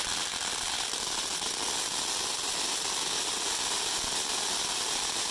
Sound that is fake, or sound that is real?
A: real